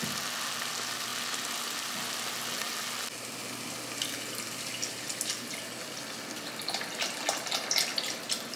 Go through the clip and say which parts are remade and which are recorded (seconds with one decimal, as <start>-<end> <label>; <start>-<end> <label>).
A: 0.0-8.6 recorded